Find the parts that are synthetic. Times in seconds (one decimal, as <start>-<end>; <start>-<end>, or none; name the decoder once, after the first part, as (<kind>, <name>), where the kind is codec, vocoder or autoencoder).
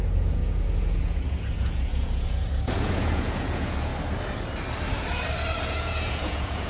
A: 0.0-3.9 (vocoder, Vocos); 5.7-6.7